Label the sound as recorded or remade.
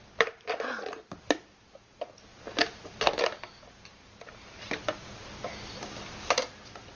recorded